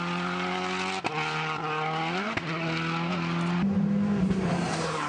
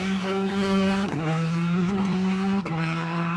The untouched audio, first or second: first